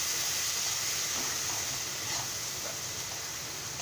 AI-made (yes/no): no